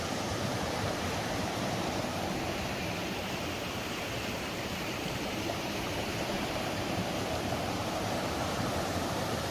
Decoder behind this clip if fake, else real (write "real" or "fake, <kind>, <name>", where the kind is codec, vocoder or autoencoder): fake, vocoder, BigVGAN v2